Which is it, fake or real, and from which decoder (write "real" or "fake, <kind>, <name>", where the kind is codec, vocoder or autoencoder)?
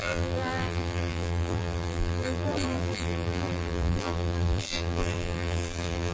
fake, vocoder, BigVGAN v2